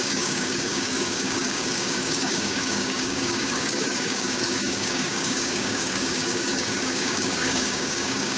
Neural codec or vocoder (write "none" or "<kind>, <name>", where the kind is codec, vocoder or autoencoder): codec, DAC